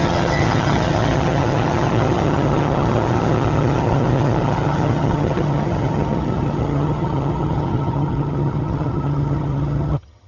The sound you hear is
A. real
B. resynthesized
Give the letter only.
B